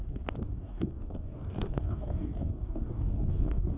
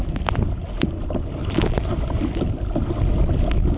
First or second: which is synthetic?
first